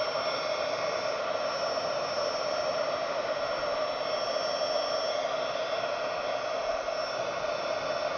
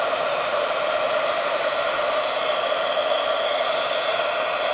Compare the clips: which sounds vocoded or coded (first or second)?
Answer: second